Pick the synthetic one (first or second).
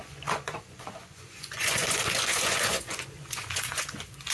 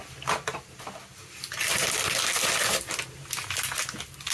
first